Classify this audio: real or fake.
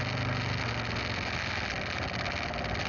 real